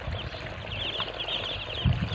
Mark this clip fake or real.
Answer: real